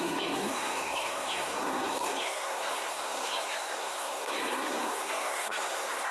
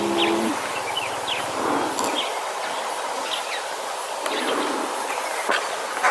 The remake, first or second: first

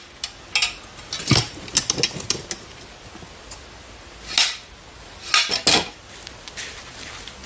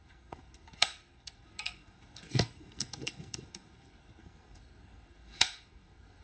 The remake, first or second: second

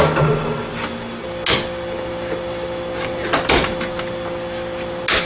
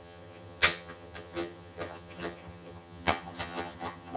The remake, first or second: second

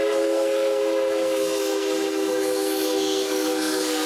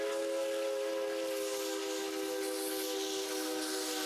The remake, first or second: first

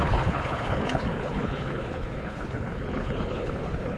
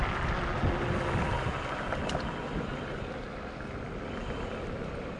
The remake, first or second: first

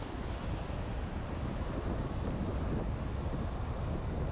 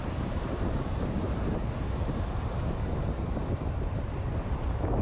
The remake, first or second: second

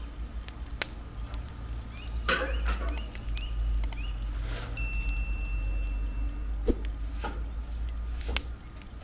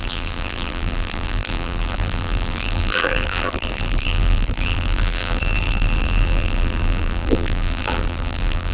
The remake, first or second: second